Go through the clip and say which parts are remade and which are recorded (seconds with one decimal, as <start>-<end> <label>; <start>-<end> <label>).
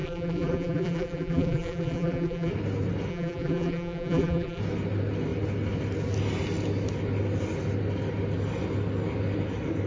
0.0-2.5 remade; 2.5-3.1 recorded; 3.1-4.6 remade; 4.6-9.9 recorded